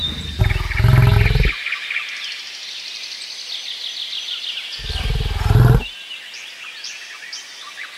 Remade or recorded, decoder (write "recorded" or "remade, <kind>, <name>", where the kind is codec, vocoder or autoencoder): recorded